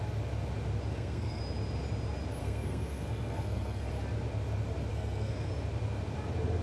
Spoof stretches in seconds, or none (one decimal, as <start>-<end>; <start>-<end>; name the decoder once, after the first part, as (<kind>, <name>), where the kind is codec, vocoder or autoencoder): 0.9-1.4 (codec, SNAC); 2.4-3.9; 4.9-5.5